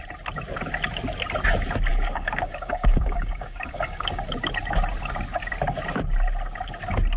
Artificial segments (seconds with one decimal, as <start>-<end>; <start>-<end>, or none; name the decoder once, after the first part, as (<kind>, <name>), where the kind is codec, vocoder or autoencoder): 1.9-4.2 (codec, DAC)